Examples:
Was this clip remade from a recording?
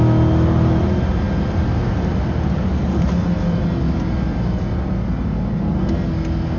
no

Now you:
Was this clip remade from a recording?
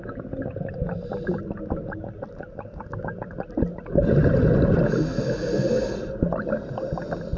no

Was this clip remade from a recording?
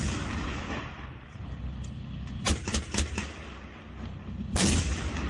no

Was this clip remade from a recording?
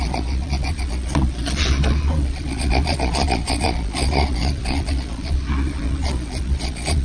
yes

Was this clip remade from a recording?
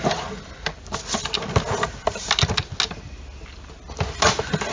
no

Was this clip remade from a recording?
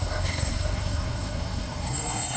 yes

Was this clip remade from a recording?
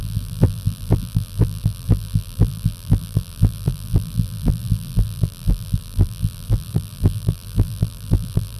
yes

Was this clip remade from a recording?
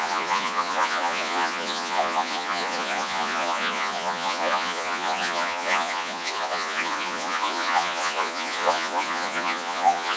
yes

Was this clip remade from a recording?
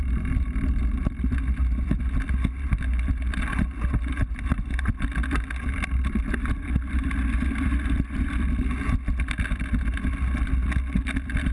no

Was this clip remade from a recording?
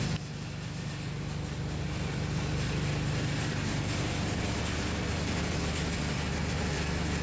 yes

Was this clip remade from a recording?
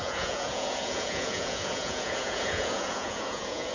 yes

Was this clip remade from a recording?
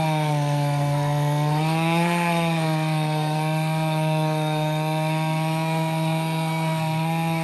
yes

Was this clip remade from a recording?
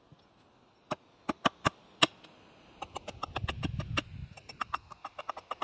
no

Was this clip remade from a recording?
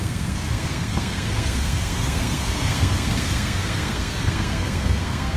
yes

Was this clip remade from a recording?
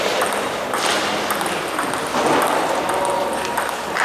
no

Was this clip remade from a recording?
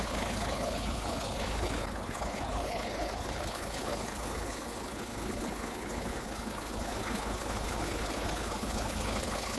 yes